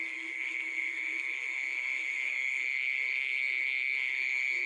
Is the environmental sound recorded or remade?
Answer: remade